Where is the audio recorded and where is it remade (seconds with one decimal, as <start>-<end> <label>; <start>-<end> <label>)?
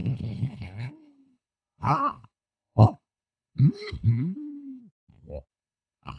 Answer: 0.0-4.8 remade; 4.8-5.5 recorded; 5.5-6.2 remade